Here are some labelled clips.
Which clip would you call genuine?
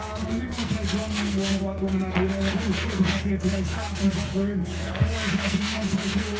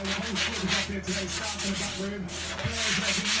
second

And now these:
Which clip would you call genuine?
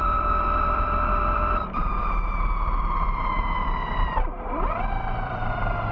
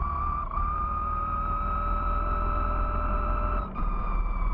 second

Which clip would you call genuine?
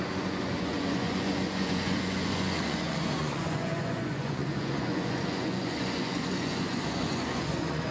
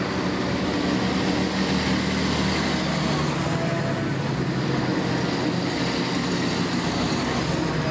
second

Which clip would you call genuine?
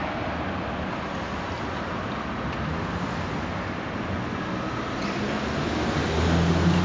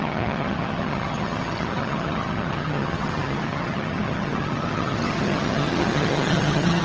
first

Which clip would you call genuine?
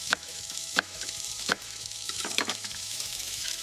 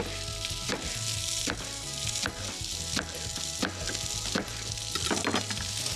second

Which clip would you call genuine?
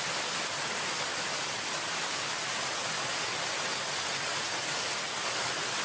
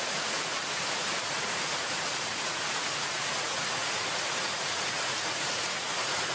first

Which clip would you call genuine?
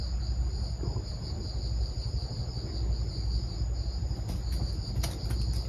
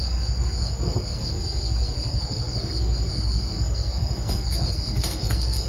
first